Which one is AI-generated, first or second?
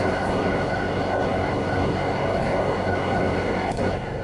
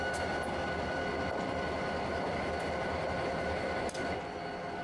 first